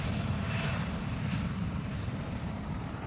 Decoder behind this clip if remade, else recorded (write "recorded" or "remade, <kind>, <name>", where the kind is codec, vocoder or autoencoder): remade, vocoder, BigVGAN v2